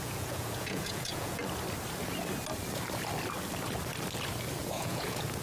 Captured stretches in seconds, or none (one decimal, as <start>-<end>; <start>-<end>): 1.4-4.6